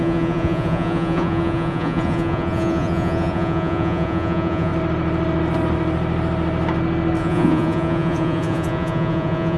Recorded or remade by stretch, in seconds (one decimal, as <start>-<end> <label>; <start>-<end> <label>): 0.0-4.7 remade; 4.7-7.2 recorded; 7.2-9.6 remade